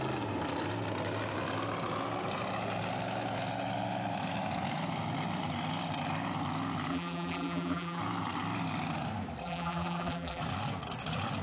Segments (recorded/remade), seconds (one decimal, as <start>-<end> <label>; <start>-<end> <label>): 0.0-6.9 recorded; 6.9-8.0 remade; 8.0-9.4 recorded; 9.4-10.4 remade; 10.4-11.4 recorded